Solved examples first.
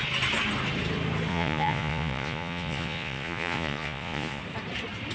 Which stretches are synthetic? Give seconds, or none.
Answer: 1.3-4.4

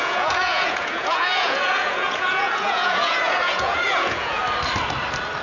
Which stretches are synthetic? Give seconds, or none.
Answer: 0.0-4.4

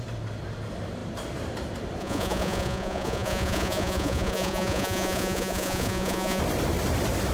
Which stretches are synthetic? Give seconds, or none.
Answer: 2.0-6.4

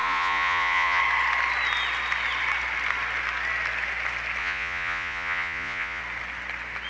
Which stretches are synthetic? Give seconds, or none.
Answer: 0.0-1.0; 4.4-6.0

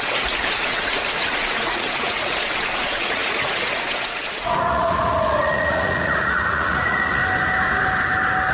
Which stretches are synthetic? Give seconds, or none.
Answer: 0.0-7.2